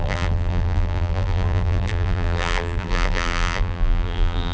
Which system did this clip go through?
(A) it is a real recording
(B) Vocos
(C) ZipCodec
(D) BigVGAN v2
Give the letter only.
D